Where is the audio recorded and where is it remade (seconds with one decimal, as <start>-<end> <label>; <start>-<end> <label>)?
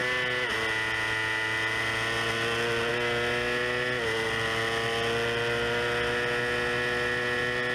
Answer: 0.0-7.7 recorded